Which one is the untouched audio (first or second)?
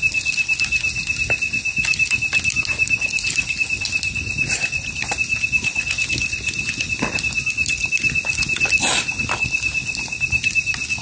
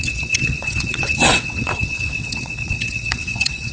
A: first